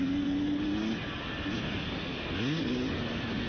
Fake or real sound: real